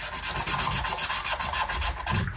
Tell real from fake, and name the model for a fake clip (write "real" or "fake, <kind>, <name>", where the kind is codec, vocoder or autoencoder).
real